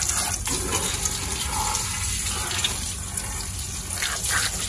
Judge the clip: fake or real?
real